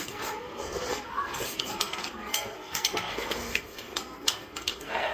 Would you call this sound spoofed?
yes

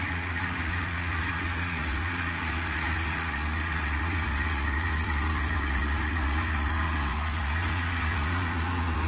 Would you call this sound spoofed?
yes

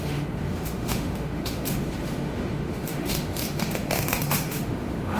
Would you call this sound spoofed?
yes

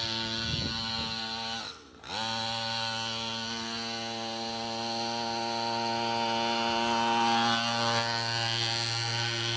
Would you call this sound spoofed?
no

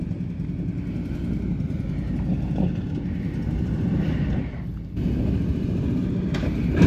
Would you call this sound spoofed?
no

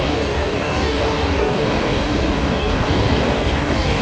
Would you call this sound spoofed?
yes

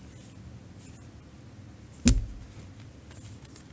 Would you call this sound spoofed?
no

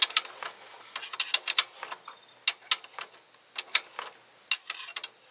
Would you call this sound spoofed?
no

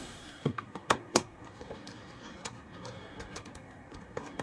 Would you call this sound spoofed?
yes